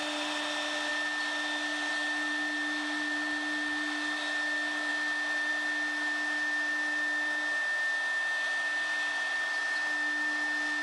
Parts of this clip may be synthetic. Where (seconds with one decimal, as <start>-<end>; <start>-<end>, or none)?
none

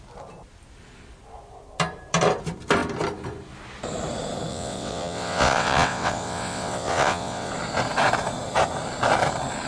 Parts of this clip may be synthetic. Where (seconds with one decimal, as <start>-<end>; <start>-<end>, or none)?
4.5-7.5